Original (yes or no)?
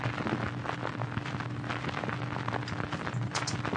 yes